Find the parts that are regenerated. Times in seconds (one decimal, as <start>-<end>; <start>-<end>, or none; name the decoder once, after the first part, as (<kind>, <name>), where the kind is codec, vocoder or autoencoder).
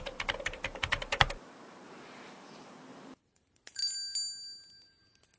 0.0-3.8 (vocoder, BigVGAN v2)